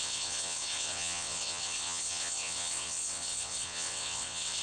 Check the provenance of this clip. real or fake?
fake